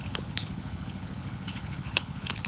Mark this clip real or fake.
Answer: fake